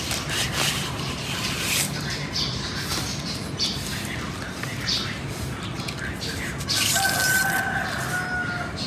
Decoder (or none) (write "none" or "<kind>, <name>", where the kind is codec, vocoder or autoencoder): none